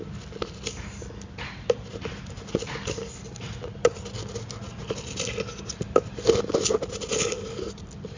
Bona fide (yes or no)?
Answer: yes